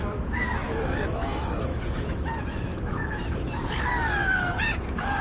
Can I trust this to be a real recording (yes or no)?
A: no